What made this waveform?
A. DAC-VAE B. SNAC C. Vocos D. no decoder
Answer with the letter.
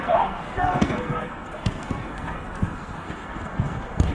B